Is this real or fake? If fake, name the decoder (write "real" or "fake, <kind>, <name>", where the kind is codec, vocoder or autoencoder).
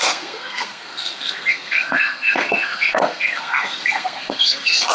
fake, codec, SNAC